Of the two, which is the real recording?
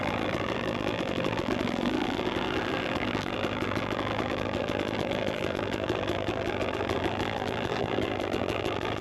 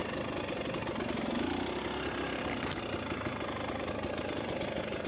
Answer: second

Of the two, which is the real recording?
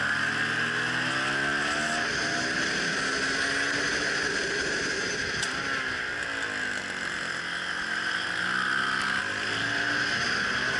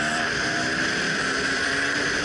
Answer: first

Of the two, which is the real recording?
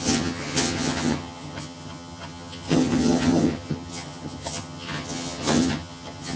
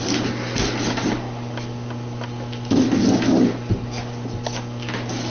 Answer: second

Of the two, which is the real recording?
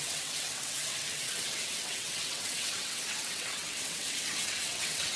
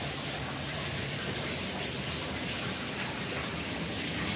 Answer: second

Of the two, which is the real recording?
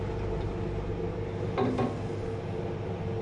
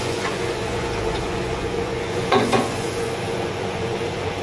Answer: first